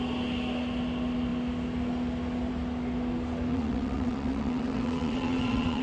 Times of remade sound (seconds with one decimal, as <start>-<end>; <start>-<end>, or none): 3.5-5.8